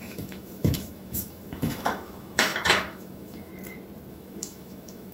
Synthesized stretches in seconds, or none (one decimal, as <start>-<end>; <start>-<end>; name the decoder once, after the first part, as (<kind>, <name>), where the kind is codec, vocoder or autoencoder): 0.0-3.5 (autoencoder, DAC-VAE); 4.1-5.1